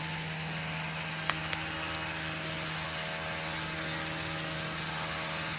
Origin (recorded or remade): recorded